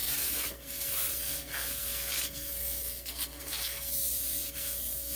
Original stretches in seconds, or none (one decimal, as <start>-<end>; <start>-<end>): none